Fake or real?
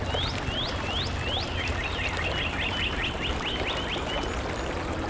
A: real